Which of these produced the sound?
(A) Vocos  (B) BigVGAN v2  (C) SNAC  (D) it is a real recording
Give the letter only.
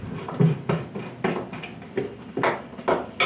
D